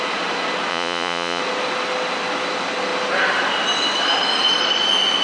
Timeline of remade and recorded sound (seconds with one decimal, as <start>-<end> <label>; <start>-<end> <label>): 0.0-0.7 recorded; 0.7-1.4 remade; 1.4-5.2 recorded